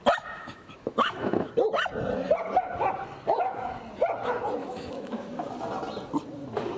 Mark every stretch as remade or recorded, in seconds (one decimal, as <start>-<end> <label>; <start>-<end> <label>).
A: 0.0-0.4 recorded; 0.4-1.5 remade; 1.5-4.6 recorded; 4.6-5.3 remade; 5.3-6.8 recorded